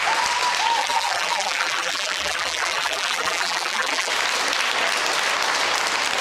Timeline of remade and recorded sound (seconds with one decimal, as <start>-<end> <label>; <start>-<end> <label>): 0.0-0.8 recorded; 0.8-4.1 remade; 4.1-6.2 recorded